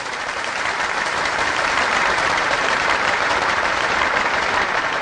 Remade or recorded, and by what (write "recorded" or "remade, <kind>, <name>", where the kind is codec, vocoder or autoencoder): remade, vocoder, BigVGAN v2